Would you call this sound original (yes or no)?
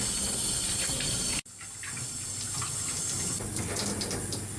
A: yes